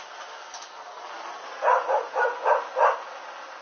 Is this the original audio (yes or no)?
yes